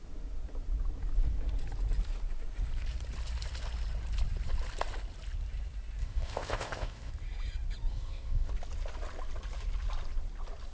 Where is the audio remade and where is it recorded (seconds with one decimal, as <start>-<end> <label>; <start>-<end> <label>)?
0.0-6.0 recorded; 6.0-7.1 remade; 7.1-7.9 recorded; 7.9-8.5 remade; 8.5-10.7 recorded

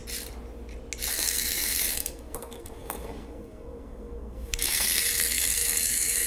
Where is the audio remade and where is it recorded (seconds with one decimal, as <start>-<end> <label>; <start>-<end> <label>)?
0.0-1.1 recorded; 1.1-6.3 remade

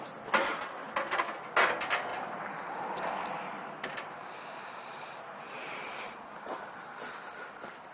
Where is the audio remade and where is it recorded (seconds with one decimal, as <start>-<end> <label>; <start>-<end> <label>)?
0.0-2.1 recorded; 2.1-6.7 remade; 6.7-7.9 recorded

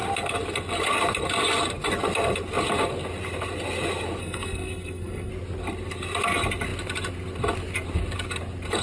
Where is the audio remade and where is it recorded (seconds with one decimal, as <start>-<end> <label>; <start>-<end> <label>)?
0.0-4.2 recorded; 4.2-5.3 remade; 5.3-8.8 recorded

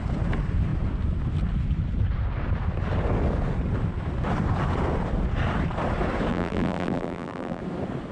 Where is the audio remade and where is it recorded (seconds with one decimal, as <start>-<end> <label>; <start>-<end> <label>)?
0.0-6.3 recorded; 6.3-7.6 remade; 7.6-8.1 recorded